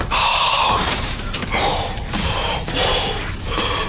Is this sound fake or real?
fake